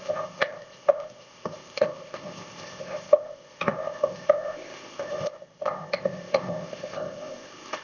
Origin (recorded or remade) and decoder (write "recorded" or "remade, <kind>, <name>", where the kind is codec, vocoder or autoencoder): remade, codec, ZipCodec